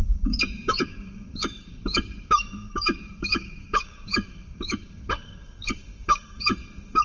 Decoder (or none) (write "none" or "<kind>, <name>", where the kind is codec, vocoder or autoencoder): codec, DAC